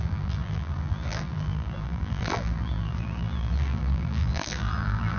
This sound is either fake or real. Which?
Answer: fake